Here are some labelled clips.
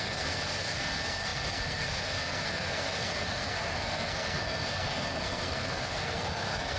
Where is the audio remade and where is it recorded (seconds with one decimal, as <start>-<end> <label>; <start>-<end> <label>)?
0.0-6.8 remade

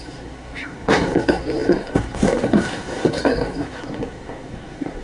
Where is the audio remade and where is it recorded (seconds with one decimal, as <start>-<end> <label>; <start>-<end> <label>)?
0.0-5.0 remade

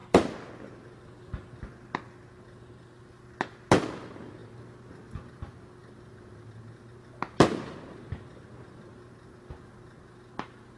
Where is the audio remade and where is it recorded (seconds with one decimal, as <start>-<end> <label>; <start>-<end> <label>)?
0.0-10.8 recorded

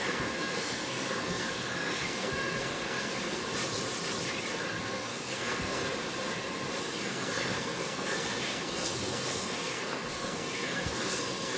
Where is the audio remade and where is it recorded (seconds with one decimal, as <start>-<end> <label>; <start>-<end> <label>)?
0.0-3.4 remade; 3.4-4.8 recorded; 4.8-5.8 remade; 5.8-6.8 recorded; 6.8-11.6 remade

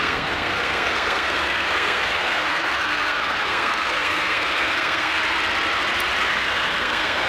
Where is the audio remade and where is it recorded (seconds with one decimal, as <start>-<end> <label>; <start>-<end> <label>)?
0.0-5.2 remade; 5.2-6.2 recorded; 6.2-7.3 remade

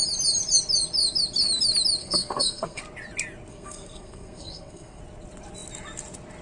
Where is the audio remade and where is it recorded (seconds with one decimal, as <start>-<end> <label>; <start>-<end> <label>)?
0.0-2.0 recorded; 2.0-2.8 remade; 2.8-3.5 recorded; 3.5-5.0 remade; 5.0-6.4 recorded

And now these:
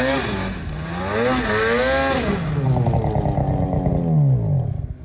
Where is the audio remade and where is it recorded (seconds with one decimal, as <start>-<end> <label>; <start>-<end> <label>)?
0.0-5.0 recorded

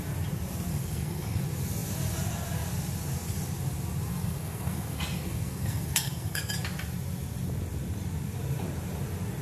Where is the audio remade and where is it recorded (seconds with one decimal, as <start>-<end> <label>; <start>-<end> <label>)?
0.0-0.7 recorded; 0.7-1.4 remade; 1.4-4.1 recorded; 4.1-6.5 remade; 6.5-9.4 recorded